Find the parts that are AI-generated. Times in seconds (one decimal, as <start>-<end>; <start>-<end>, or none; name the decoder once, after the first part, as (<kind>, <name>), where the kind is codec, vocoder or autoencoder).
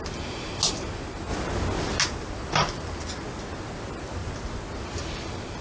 none